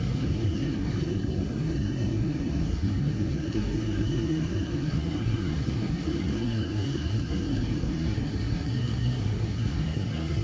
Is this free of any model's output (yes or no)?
no